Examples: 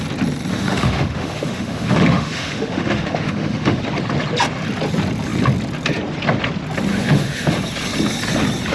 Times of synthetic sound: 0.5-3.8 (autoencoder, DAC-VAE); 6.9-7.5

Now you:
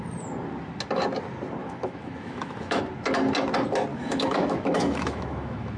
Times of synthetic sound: 1.6-2.8 (autoencoder, DAC-VAE); 3.9-5.8

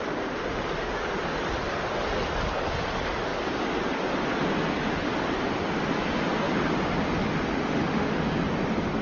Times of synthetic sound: 7.5-8.1 (autoencoder, DAC-VAE)

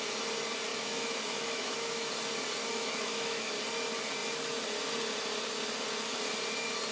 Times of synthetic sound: 0.7-2.1 (autoencoder, DAC-VAE); 2.6-3.5

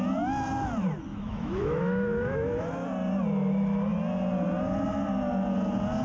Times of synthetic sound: 1.1-2.6 (autoencoder, DAC-VAE)

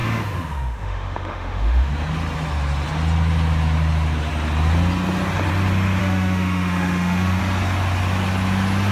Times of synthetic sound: 0.0-1.9 (autoencoder, DAC-VAE); 6.0-7.4

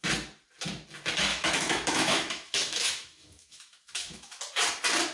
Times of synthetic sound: 1.3-4.4 (autoencoder, DAC-VAE)

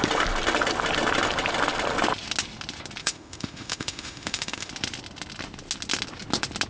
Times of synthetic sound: 3.0-4.7 (autoencoder, DAC-VAE)